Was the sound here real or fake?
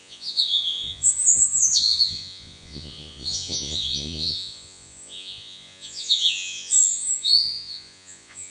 fake